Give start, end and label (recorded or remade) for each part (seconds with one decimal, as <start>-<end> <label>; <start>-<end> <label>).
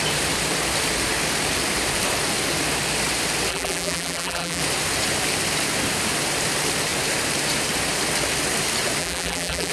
0.0-3.5 recorded; 3.5-4.6 remade; 4.6-9.0 recorded; 9.0-9.7 remade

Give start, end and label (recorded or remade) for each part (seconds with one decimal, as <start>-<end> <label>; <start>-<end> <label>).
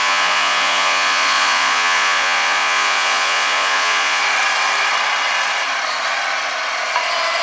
0.0-4.2 remade; 4.2-7.4 recorded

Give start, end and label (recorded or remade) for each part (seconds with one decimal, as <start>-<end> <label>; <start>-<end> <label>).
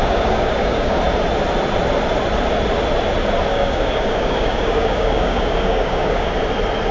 0.0-1.0 remade; 1.0-3.5 recorded; 3.5-6.3 remade; 6.3-6.9 recorded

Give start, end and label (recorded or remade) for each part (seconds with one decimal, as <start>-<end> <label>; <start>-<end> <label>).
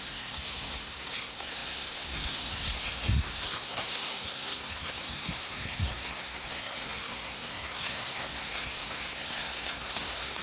0.0-10.4 remade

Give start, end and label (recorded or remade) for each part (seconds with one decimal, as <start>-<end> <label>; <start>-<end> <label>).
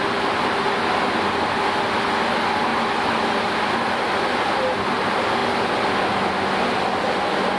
0.0-7.6 recorded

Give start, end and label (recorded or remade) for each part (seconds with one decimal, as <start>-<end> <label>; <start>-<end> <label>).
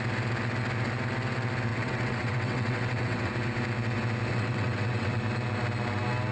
0.0-1.7 recorded; 1.7-3.3 remade; 3.3-4.3 recorded; 4.3-5.2 remade; 5.2-6.3 recorded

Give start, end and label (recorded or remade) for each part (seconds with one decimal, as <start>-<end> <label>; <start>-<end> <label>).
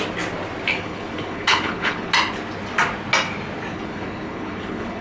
0.0-0.7 recorded; 0.7-2.1 remade; 2.1-3.7 recorded; 3.7-5.0 remade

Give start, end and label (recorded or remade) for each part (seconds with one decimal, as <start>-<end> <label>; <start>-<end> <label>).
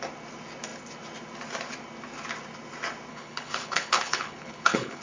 0.0-3.1 recorded; 3.1-5.0 remade